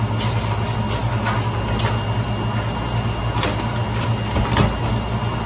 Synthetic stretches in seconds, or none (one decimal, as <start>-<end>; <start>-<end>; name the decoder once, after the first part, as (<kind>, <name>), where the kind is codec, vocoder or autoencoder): none